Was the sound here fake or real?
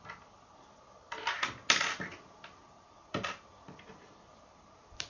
real